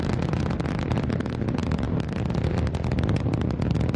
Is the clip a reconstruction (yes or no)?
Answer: no